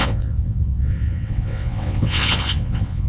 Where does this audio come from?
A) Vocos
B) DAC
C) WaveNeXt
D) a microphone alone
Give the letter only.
C